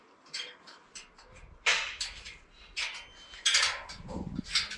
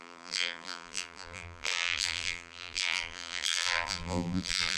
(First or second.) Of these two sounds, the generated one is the second